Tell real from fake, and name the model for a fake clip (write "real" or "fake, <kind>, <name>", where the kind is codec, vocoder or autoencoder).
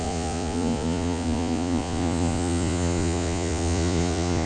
fake, vocoder, Vocos